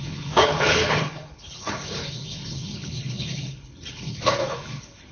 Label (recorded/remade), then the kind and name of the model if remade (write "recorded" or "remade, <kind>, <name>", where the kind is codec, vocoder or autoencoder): remade, codec, HILCodec